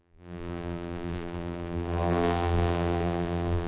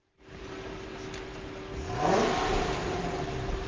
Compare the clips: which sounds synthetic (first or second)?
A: first